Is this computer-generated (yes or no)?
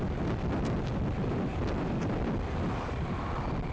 yes